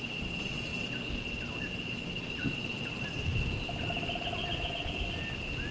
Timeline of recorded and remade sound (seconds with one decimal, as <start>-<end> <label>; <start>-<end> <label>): 0.0-5.7 recorded